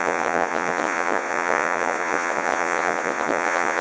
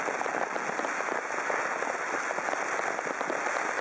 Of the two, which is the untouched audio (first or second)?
second